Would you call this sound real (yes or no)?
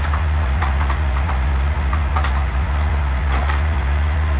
no